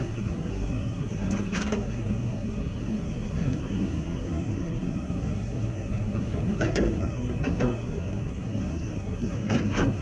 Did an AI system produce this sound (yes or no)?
yes